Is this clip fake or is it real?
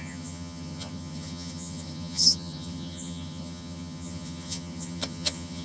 fake